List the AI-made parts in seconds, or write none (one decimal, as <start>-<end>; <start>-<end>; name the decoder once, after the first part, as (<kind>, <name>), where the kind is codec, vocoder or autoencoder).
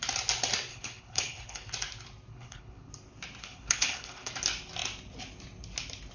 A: 0.7-1.7 (codec, HILCodec); 2.3-2.9; 3.4-4.3